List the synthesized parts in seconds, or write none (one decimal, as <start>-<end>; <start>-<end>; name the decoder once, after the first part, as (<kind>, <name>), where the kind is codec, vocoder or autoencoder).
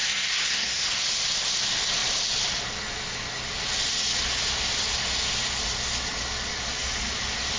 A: 0.0-0.9 (codec, SNAC)